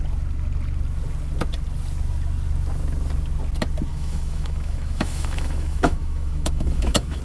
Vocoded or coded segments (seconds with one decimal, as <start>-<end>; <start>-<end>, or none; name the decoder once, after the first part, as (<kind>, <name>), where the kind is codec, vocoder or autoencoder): 3.9-7.2 (autoencoder, DAC-VAE)